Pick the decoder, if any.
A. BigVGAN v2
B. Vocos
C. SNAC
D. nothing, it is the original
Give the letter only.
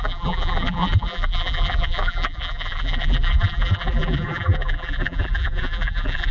A